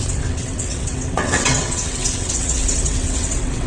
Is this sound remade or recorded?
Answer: remade